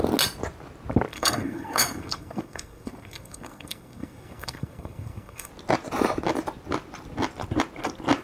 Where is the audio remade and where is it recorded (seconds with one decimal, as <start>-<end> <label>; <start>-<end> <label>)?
0.0-1.1 recorded; 1.1-5.5 remade; 5.5-8.2 recorded